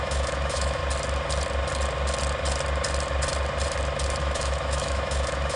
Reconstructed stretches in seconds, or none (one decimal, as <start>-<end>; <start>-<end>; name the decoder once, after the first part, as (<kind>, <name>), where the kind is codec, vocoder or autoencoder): 0.0-0.8 (autoencoder, DAC-VAE); 4.2-5.6